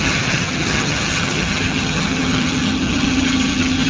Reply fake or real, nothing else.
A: fake